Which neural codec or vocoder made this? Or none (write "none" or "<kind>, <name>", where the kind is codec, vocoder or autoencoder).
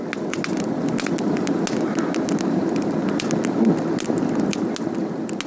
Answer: none